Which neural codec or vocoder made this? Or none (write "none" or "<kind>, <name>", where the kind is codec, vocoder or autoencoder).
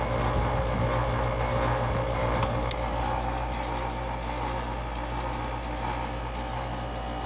none